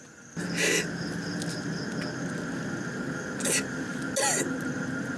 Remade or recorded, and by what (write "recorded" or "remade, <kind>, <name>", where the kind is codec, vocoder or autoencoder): recorded